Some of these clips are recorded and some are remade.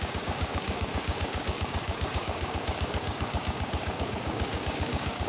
remade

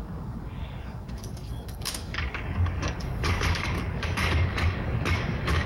remade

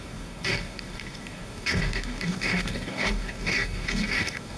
remade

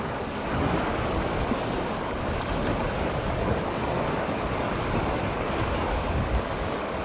remade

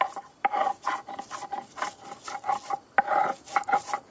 recorded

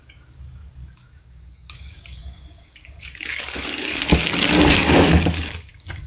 remade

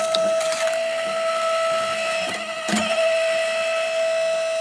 recorded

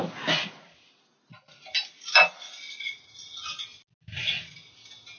recorded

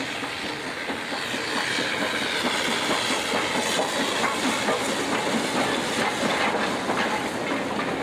recorded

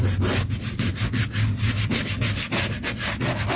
recorded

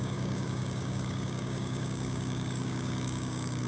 remade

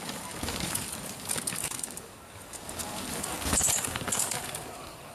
remade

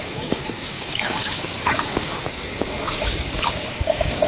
remade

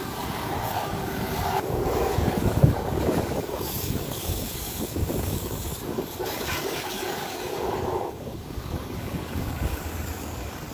remade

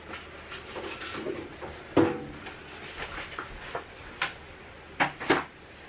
recorded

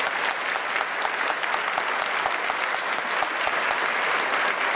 recorded